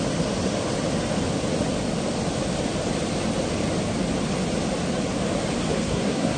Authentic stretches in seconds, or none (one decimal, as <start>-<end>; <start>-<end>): 0.0-5.7